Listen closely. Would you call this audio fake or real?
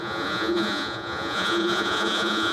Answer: fake